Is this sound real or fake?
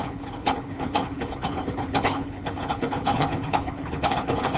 fake